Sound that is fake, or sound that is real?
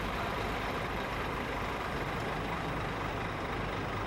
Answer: fake